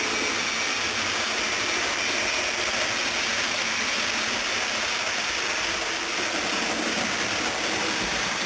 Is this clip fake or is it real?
real